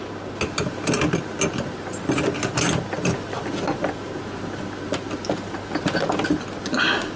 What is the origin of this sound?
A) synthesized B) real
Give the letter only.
B